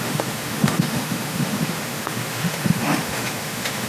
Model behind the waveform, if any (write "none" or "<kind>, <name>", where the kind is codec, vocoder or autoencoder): autoencoder, DAC-VAE